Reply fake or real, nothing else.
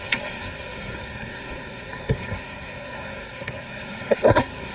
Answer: fake